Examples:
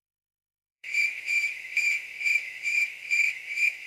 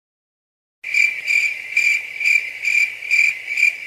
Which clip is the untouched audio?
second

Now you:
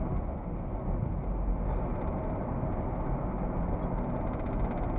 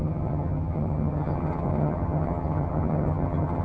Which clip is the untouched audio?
first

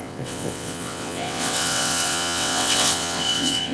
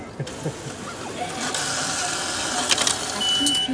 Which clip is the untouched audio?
second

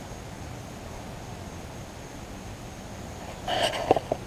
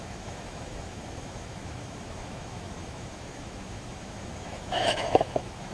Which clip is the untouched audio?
first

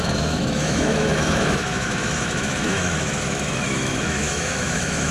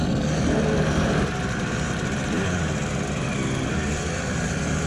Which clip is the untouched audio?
second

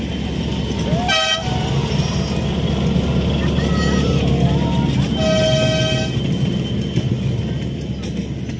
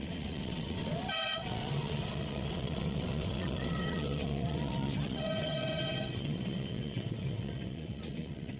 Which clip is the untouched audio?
first